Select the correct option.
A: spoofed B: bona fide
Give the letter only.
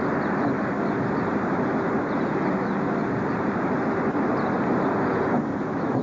B